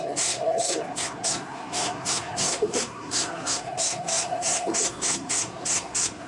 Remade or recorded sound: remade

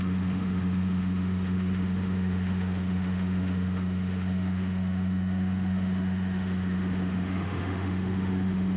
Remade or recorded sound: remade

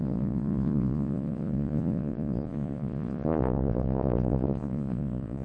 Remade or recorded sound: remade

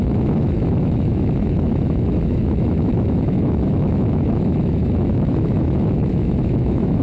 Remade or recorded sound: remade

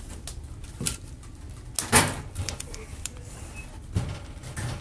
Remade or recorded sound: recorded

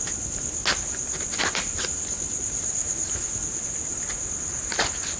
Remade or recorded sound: recorded